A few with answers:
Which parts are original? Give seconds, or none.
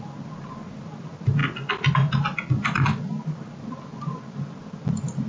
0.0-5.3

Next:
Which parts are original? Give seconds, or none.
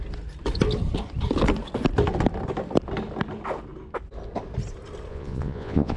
0.0-5.1